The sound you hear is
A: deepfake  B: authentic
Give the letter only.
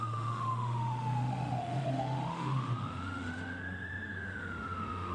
A